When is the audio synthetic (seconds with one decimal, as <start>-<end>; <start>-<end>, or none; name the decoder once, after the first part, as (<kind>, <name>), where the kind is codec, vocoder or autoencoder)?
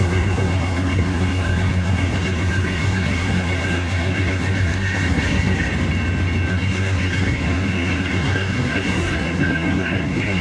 0.0-5.7 (codec, SNAC); 6.5-10.4